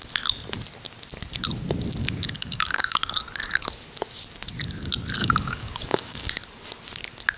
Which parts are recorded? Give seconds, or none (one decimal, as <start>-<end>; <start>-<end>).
0.0-2.0; 3.0-5.2; 6.3-7.4